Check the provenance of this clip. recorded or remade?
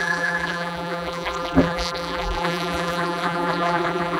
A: remade